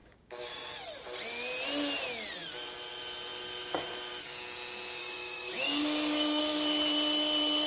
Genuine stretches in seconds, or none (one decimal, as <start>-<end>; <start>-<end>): 0.7-5.0; 6.4-7.7